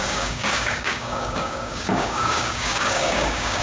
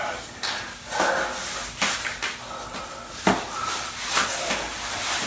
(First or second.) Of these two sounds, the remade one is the first